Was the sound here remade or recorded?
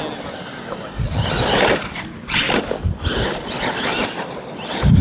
recorded